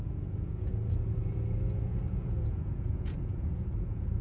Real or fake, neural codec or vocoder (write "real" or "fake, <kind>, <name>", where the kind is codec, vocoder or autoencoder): fake, vocoder, Vocos